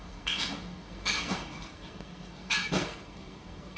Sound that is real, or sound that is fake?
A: fake